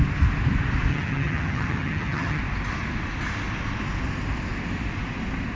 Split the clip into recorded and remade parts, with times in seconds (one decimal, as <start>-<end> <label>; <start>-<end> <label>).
0.0-0.9 recorded; 0.9-2.4 remade; 2.4-5.5 recorded